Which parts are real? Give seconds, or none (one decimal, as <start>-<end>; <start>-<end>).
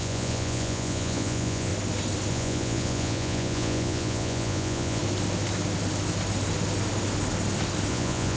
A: 1.7-2.3; 5.0-7.9